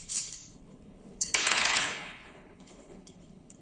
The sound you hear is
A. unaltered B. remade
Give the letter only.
B